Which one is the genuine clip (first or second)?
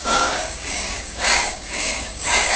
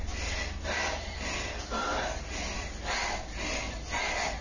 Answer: second